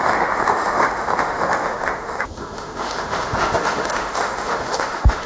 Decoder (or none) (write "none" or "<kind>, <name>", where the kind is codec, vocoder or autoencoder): autoencoder, DAC-VAE